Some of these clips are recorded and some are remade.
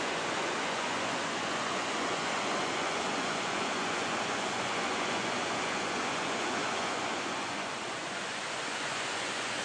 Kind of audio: remade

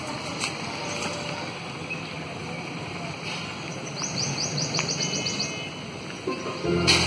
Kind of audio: recorded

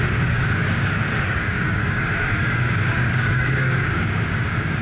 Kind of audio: remade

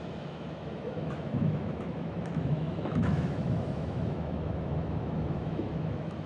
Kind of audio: remade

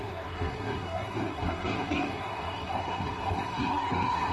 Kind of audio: remade